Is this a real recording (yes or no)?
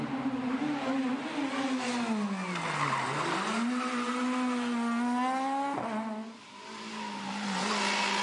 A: yes